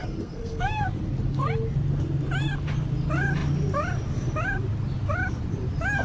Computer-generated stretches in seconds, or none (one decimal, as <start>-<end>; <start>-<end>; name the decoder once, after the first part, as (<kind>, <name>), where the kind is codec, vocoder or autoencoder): 0.0-0.8 (codec, SNAC)